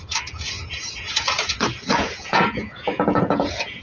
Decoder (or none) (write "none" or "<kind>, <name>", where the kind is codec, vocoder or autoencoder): vocoder, Vocos